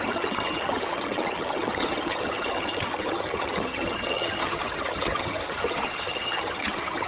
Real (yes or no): no